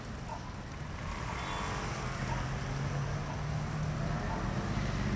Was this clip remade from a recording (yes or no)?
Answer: no